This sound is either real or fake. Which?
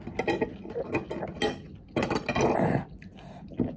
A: real